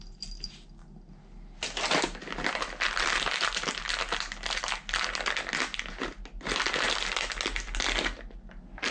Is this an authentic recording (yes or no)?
yes